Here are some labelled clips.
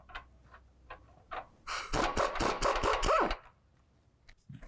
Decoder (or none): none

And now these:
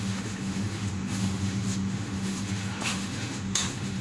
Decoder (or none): autoencoder, DAC-VAE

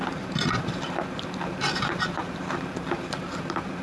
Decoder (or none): vocoder, BigVGAN v2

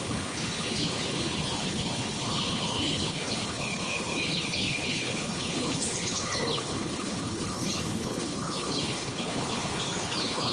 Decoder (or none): codec, HILCodec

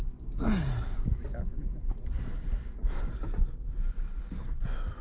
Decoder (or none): none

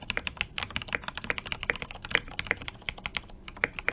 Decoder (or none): none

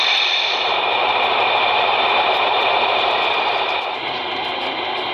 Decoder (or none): vocoder, BigVGAN v2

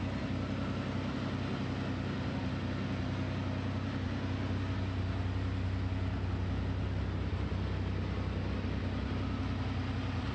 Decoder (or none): none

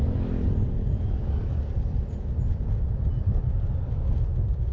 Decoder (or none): none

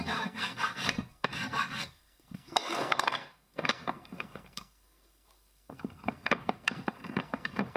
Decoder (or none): codec, SNAC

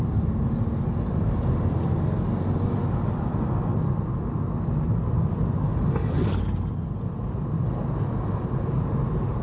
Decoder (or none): none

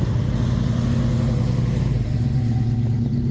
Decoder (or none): none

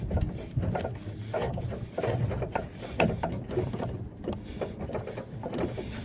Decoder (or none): none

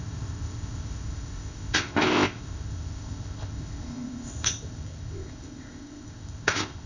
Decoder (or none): codec, ZipCodec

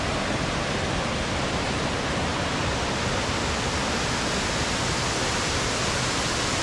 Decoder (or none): none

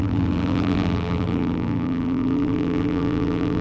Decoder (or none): vocoder, BigVGAN v2